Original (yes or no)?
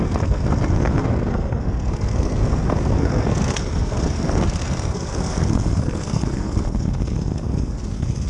no